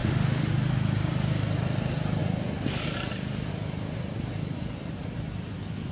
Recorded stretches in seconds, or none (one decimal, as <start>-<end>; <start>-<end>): 0.5-5.9